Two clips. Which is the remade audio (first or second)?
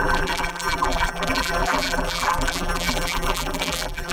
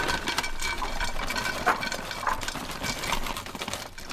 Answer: first